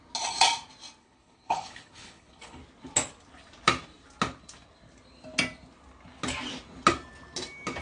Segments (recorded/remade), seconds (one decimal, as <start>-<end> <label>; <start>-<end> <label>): 0.0-1.0 recorded; 1.0-2.6 remade; 2.6-7.8 recorded